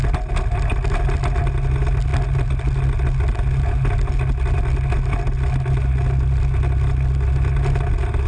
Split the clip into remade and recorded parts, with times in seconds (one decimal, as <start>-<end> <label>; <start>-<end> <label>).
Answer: 0.0-8.3 recorded